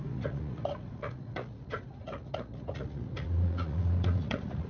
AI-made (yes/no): yes